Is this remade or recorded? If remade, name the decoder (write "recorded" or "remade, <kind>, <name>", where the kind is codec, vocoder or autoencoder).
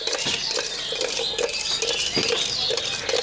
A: recorded